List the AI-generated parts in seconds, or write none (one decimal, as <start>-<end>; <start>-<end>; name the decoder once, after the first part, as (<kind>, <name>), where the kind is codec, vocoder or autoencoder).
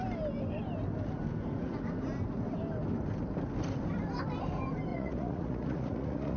4.9-6.4 (vocoder, Vocos)